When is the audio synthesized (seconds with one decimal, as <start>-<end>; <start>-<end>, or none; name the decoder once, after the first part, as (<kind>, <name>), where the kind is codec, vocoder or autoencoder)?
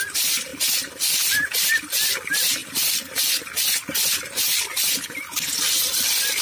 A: none